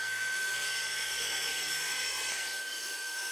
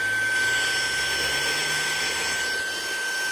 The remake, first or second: first